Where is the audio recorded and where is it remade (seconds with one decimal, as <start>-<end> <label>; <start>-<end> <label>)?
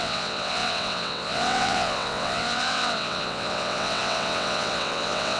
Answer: 0.0-5.4 remade